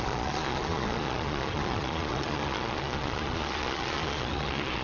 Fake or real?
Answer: fake